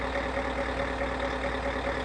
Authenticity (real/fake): real